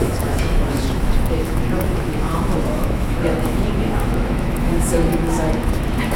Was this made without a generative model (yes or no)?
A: no